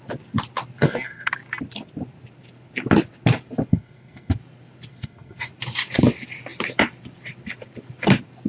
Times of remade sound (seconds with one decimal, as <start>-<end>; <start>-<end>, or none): 0.8-1.3; 3.7-4.3; 4.9-5.5